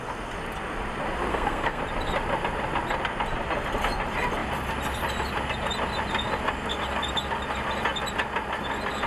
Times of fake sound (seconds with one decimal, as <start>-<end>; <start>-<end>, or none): 1.3-1.8